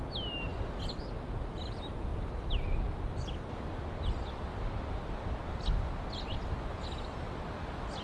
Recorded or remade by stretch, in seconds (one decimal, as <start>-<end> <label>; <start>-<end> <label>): 0.0-8.0 recorded